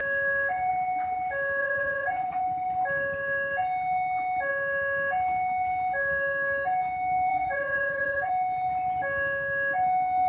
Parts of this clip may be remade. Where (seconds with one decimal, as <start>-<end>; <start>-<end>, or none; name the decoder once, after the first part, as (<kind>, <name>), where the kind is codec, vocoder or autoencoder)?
1.6-2.4 (vocoder, Vocos); 7.3-8.3